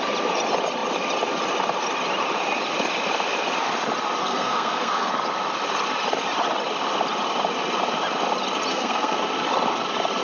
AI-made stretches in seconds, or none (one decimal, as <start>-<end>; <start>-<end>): 4.2-5.1; 8.7-9.2